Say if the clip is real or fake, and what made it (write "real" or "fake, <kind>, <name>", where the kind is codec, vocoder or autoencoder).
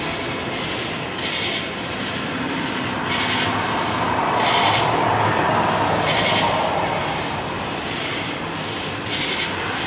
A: real